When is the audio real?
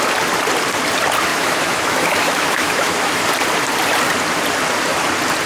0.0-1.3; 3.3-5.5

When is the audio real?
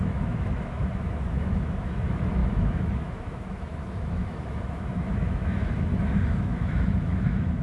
none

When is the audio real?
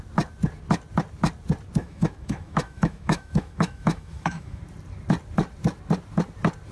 0.0-1.8; 4.6-6.7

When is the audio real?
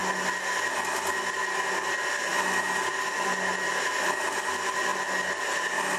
0.0-6.0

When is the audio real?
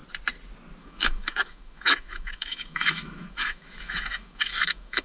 0.0-0.8